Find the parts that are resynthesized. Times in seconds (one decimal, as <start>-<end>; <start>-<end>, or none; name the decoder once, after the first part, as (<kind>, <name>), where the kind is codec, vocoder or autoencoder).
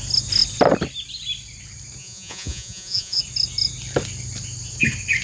2.0-3.2 (vocoder, Vocos)